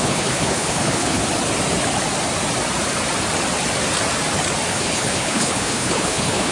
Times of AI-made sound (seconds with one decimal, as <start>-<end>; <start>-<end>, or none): 0.0-1.2; 4.7-6.5